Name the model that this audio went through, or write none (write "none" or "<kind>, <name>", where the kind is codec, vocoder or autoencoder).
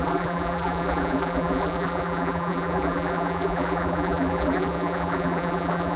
vocoder, BigVGAN v2